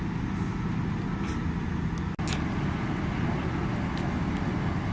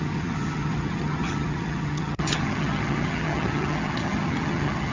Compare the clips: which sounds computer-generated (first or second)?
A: second